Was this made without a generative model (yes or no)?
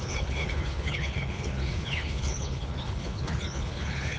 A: no